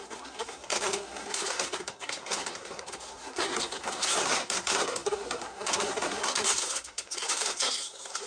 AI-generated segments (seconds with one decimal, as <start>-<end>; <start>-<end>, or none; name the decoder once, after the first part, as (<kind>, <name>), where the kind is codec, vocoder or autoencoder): 0.0-8.3 (codec, SNAC)